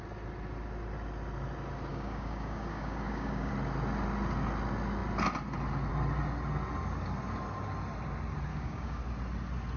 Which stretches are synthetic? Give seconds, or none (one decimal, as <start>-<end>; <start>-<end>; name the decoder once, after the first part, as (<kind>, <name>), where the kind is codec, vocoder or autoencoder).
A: 1.9-3.5 (codec, DAC); 8.5-9.0